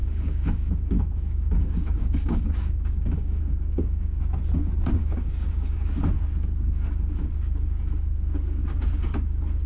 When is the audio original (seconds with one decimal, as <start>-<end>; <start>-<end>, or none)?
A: 4.2-5.0; 5.9-9.7